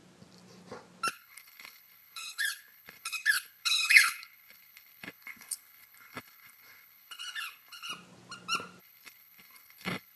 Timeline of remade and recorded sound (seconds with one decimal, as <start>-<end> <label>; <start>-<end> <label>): 0.0-1.1 recorded; 1.1-7.9 remade; 7.9-8.8 recorded; 8.8-10.2 remade